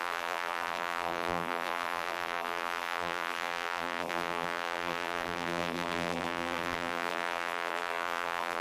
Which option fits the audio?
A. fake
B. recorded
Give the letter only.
A